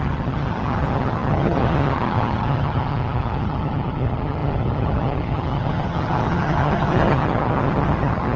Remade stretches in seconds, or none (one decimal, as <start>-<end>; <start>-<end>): 0.0-8.4